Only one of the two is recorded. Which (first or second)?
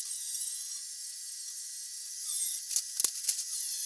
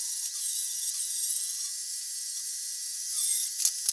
first